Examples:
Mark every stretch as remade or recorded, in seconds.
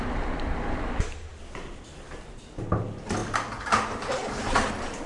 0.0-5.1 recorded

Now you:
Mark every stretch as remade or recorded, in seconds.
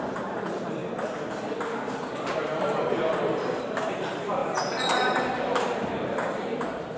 0.0-0.8 remade; 0.8-2.9 recorded; 2.9-7.0 remade